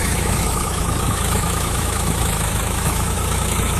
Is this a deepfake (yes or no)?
yes